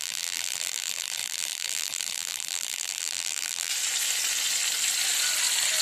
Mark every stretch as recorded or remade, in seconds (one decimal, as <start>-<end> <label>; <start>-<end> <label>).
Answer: 0.0-3.7 remade; 3.7-5.8 recorded